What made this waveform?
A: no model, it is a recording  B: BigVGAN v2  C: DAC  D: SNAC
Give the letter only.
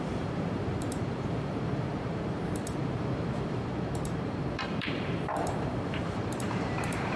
B